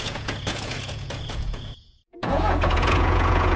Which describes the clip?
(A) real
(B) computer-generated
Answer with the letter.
B